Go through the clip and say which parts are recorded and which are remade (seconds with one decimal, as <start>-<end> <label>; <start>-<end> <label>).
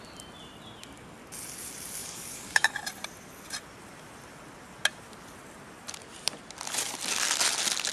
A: 0.0-2.0 recorded; 2.0-2.7 remade; 2.7-7.9 recorded